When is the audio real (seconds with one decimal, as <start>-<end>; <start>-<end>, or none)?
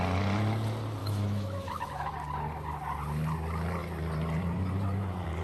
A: 0.0-1.0; 2.1-5.4